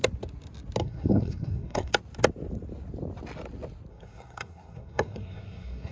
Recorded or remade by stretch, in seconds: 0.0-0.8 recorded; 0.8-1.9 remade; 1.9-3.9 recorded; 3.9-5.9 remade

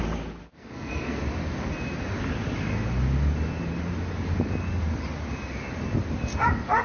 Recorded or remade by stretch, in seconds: 0.0-0.4 recorded; 0.4-1.2 remade; 1.2-6.8 recorded